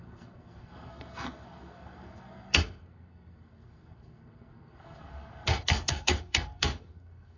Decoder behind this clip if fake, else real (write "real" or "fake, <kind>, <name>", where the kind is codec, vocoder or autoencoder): fake, codec, SNAC